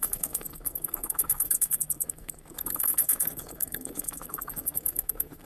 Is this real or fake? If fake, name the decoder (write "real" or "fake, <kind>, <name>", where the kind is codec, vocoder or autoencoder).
fake, codec, SNAC